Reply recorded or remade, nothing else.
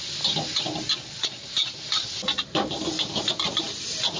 recorded